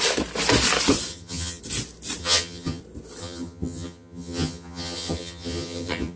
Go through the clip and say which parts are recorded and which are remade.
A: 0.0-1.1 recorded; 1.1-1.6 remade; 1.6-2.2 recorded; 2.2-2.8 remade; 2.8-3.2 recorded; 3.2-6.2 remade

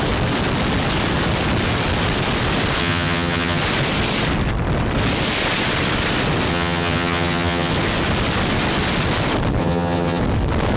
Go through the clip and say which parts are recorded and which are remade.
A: 0.0-2.8 recorded; 2.8-3.6 remade; 3.6-6.5 recorded; 6.5-7.7 remade; 7.7-9.6 recorded; 9.6-10.2 remade; 10.2-10.8 recorded

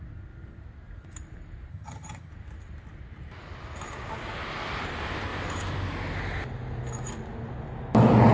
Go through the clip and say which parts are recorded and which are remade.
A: 0.0-1.7 recorded; 1.7-2.3 remade; 2.3-8.3 recorded